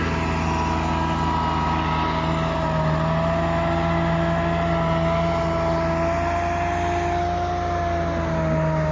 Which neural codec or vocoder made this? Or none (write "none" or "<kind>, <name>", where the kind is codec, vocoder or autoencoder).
none